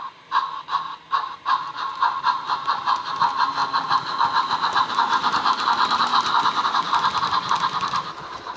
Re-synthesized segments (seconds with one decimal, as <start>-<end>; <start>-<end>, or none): 0.0-3.6; 4.9-6.1; 8.2-8.6